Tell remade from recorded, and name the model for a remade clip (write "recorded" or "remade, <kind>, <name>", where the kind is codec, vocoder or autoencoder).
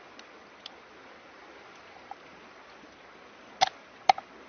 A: recorded